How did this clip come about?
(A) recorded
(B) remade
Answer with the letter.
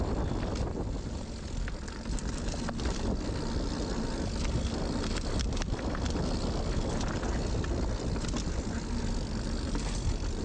A